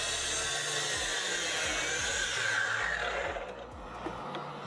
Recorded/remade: recorded